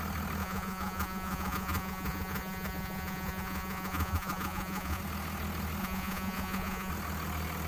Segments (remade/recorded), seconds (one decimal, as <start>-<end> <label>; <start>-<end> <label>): 0.0-0.4 recorded; 0.4-5.0 remade; 5.0-5.8 recorded; 5.8-6.9 remade; 6.9-7.7 recorded